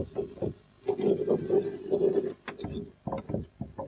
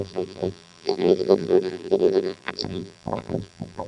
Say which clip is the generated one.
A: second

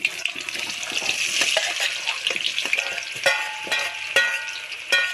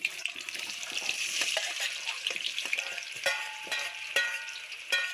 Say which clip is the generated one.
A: second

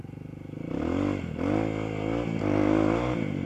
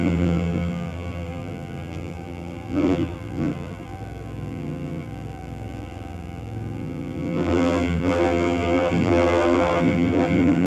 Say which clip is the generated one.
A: second